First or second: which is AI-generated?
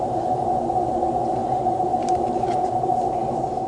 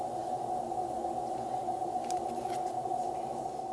first